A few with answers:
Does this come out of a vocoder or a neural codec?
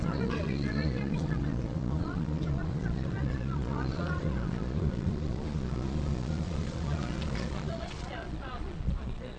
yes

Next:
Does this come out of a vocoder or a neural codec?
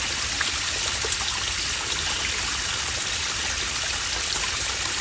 no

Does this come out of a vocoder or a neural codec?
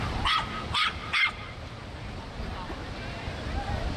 no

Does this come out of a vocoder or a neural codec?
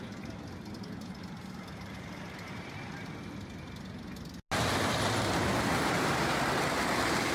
no